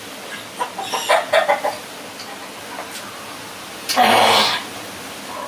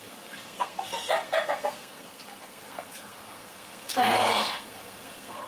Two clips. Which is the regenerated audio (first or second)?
second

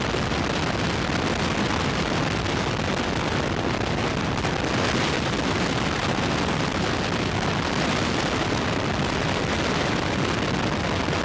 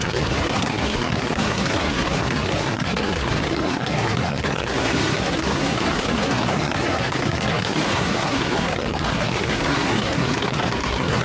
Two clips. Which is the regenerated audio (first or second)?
second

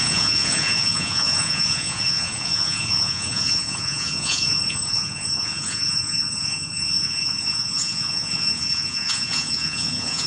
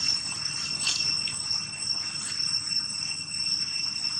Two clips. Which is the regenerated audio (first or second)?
first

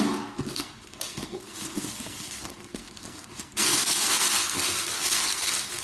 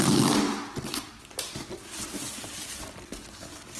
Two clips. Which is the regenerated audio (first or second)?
first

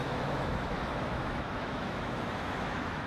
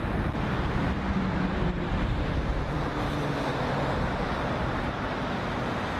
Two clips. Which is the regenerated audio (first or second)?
first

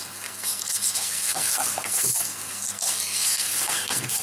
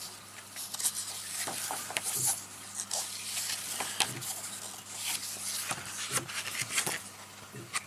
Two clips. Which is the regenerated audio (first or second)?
first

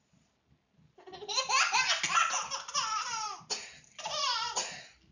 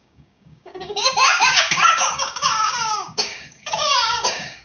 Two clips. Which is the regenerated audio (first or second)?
second